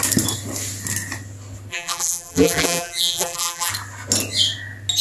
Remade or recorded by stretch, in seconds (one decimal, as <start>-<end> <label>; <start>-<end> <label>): 0.0-1.7 recorded; 1.7-3.7 remade; 3.7-5.0 recorded